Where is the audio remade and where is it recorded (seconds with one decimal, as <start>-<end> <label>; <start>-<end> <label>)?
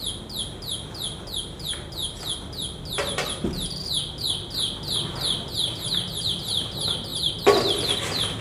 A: 0.0-8.4 recorded